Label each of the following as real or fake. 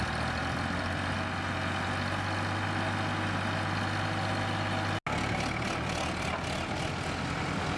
real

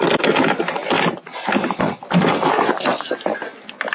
real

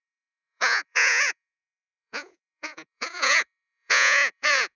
fake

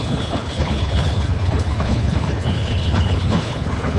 fake